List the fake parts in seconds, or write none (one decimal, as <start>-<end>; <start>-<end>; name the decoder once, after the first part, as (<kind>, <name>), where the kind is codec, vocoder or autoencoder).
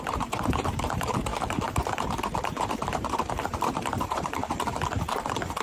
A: 0.0-4.4 (vocoder, BigVGAN v2)